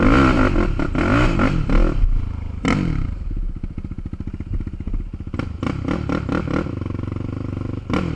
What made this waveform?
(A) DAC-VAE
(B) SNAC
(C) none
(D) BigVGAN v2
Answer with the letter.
C